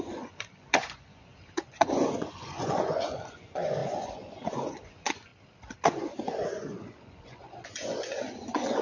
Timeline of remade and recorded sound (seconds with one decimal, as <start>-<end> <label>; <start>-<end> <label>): 0.0-5.3 remade; 5.3-5.9 recorded; 5.9-8.8 remade